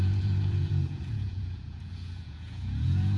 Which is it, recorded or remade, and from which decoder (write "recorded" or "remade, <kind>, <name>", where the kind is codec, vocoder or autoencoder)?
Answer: remade, vocoder, Vocos